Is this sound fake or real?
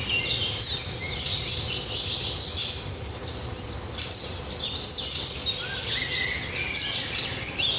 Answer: real